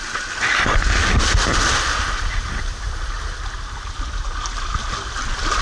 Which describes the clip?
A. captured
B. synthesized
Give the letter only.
A